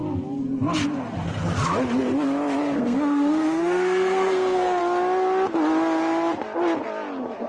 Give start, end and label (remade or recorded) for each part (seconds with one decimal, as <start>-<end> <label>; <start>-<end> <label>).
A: 0.0-2.6 recorded; 2.6-4.8 remade; 4.8-7.5 recorded